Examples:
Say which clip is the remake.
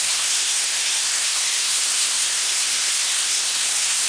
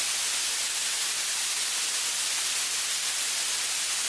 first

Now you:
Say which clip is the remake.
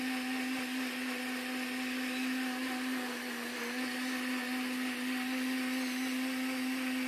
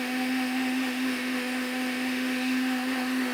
second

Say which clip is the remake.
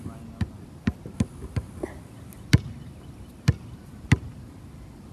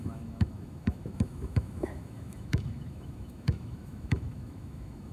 second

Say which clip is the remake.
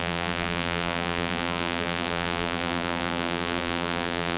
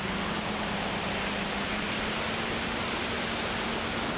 first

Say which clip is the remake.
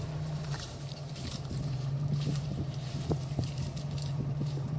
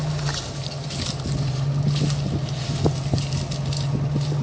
first